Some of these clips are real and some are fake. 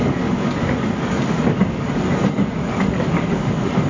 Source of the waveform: fake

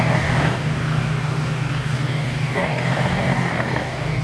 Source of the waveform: fake